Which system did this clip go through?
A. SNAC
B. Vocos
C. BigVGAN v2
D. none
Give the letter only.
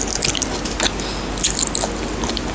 D